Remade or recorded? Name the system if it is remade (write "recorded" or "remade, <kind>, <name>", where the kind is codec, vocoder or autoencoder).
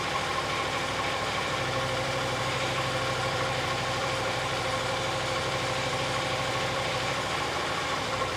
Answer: remade, vocoder, BigVGAN v2